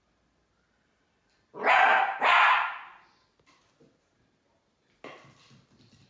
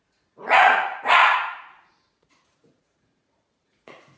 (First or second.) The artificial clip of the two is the second